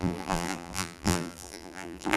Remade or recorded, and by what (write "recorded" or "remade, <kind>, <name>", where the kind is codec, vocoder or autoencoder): remade, vocoder, BigVGAN v2